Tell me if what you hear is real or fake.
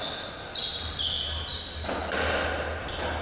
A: real